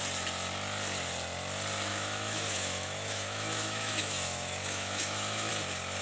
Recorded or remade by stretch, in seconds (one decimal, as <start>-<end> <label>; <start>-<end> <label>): 0.0-1.9 recorded; 1.9-5.5 remade; 5.5-6.0 recorded